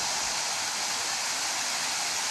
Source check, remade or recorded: recorded